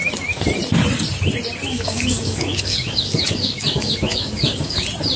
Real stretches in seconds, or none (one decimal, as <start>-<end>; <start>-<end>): 0.0-1.7; 4.8-5.2